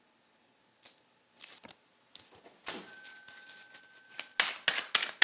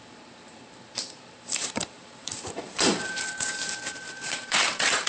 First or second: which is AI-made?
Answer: second